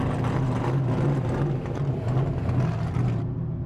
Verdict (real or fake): real